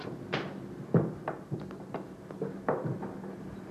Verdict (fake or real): real